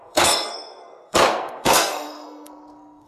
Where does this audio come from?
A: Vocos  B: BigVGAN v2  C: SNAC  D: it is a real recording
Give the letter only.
C